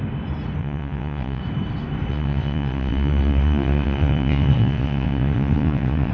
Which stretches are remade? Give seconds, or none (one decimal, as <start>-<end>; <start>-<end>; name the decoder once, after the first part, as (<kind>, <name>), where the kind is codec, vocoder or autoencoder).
0.6-1.4 (vocoder, WaveNeXt); 2.1-6.1